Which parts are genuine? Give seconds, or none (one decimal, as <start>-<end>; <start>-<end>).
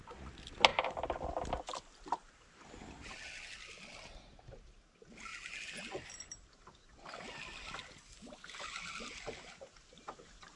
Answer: 0.0-10.6